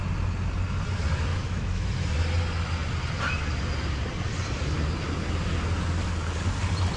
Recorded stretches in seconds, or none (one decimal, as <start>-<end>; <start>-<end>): 0.0-1.3; 1.9-7.0